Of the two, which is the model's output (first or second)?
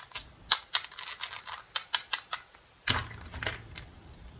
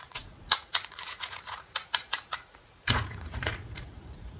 second